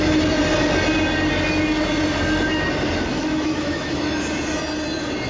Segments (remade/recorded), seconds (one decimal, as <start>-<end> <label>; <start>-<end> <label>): 0.0-3.1 recorded; 3.1-4.2 remade; 4.2-5.3 recorded